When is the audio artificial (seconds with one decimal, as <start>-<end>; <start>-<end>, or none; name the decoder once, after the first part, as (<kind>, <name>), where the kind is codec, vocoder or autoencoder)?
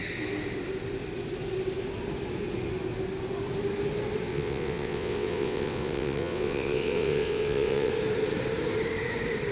4.3-7.9 (vocoder, WaveNeXt)